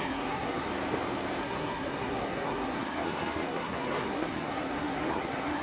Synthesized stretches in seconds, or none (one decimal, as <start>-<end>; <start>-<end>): 0.0-0.7; 1.4-5.6